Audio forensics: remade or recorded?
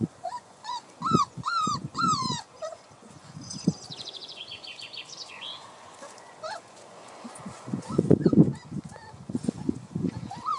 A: remade